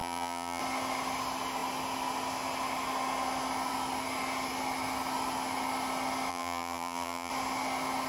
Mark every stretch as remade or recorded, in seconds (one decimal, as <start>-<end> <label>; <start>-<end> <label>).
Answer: 0.0-0.6 remade; 0.6-6.3 recorded; 6.3-7.3 remade; 7.3-8.1 recorded

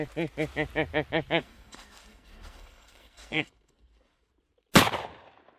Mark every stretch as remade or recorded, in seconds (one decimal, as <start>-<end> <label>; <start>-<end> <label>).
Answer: 0.0-1.4 recorded; 1.4-4.3 remade; 4.3-5.6 recorded